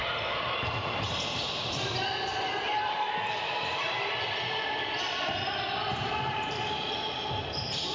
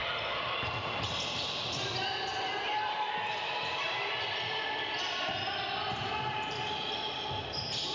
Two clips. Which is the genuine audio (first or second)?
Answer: second